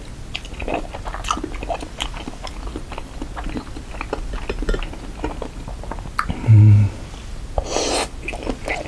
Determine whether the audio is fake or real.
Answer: real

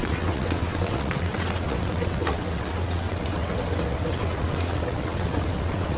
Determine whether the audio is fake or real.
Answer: fake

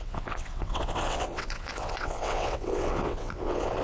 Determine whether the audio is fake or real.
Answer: fake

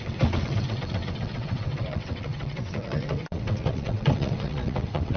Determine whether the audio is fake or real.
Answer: fake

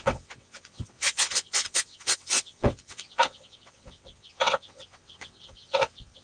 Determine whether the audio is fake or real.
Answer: fake